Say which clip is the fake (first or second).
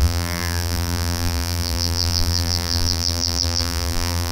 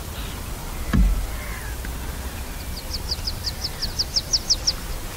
first